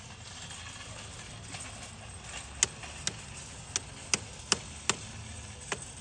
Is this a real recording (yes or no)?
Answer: yes